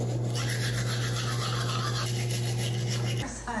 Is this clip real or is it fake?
real